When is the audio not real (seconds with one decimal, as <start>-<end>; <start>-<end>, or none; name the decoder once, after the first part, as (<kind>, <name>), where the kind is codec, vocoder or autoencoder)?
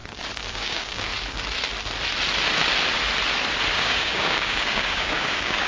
0.5-1.1 (codec, DAC); 3.7-5.7